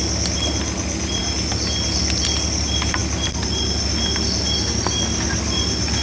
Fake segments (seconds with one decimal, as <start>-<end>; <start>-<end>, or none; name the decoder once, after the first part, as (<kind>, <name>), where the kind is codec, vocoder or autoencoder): none